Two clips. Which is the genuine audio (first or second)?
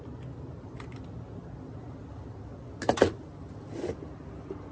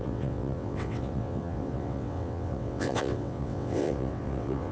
first